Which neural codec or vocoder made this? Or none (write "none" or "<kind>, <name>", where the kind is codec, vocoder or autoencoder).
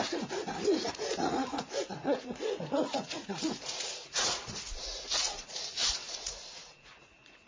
vocoder, Vocos